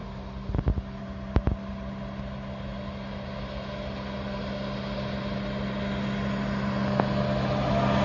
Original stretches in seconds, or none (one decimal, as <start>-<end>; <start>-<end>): 0.0-8.0